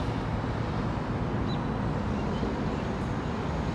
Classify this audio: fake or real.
real